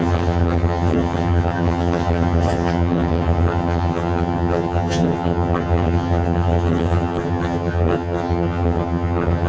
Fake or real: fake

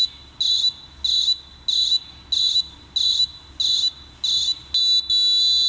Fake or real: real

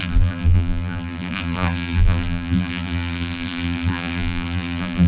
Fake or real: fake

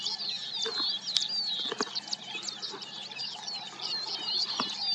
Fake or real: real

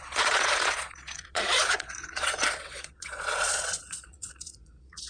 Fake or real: fake